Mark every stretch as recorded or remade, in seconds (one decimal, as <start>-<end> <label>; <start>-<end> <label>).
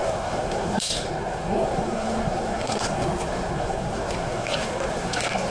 0.0-5.5 remade